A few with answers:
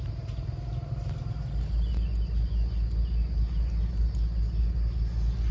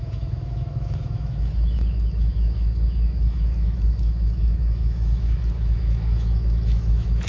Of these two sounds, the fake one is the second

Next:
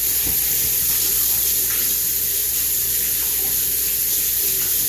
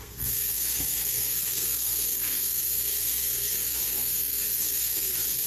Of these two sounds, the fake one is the second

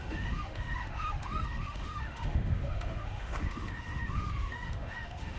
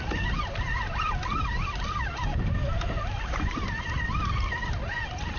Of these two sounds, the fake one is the first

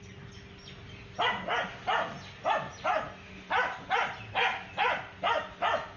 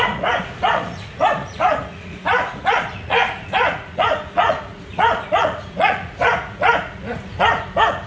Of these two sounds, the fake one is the second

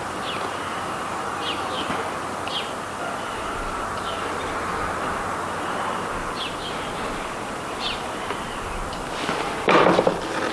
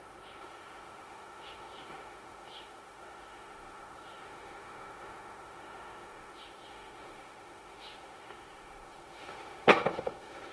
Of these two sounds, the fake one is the second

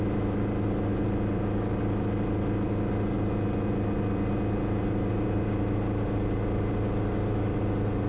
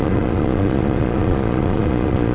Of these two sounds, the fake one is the second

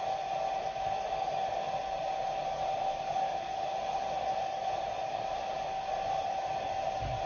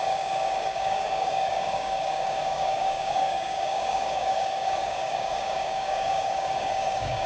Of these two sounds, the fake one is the second